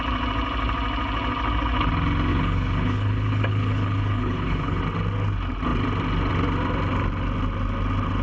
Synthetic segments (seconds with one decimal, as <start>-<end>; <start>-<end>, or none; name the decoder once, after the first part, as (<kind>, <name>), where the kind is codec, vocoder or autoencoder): 2.3-4.8 (codec, HILCodec)